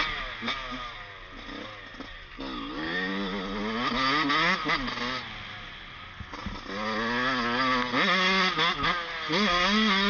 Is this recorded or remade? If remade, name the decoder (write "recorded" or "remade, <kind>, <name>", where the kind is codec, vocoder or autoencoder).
recorded